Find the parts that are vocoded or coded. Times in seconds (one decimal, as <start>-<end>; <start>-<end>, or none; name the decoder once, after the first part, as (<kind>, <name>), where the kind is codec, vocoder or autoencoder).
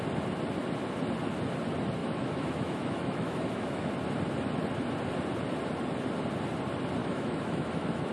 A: 2.0-3.9 (autoencoder, DAC-VAE); 7.0-8.1